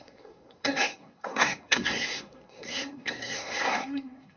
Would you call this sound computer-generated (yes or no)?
yes